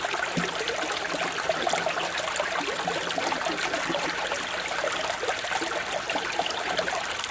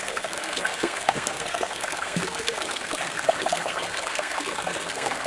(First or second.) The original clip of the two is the first